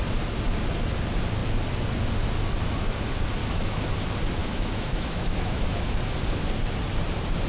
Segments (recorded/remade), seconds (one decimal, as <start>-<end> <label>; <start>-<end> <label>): 0.0-3.4 recorded; 3.4-3.9 remade; 3.9-4.4 recorded; 4.4-5.8 remade; 5.8-7.5 recorded